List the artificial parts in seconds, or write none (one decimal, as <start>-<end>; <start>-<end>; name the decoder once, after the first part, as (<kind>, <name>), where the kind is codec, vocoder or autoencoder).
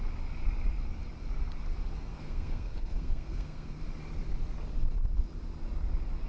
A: 2.1-3.8 (codec, SNAC)